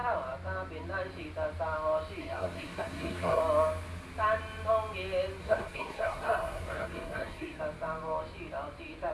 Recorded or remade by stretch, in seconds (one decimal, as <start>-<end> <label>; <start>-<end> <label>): 0.0-2.2 recorded; 2.2-3.4 remade; 3.4-5.4 recorded; 5.4-7.6 remade; 7.6-9.1 recorded